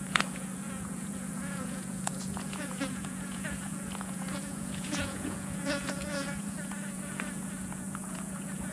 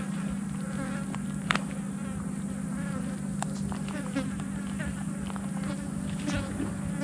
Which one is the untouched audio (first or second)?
second